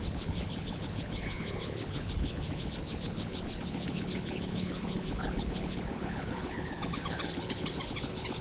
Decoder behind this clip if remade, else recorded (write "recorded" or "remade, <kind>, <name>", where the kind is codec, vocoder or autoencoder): remade, codec, HILCodec